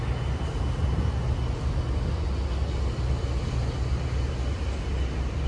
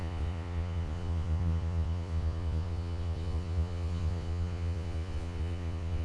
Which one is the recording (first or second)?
first